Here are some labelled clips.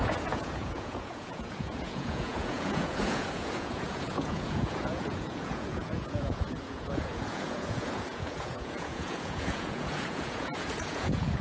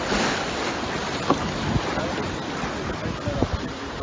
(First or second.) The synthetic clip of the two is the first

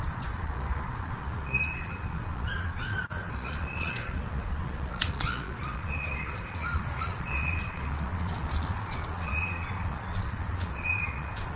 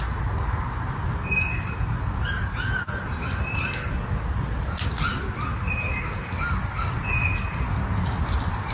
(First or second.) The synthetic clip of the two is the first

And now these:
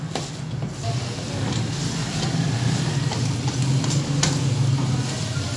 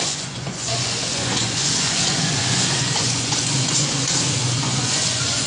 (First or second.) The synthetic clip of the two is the second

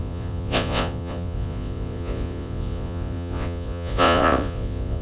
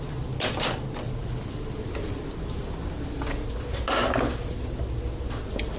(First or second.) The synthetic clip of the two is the first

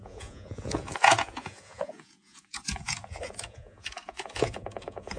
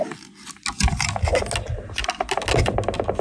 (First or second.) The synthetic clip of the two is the first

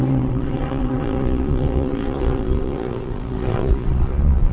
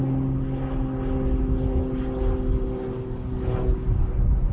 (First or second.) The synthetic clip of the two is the first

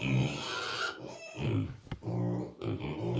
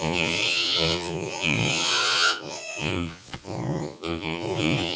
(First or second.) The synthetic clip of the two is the second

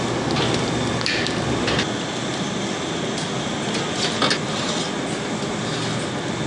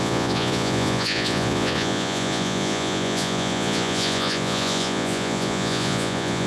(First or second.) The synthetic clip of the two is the second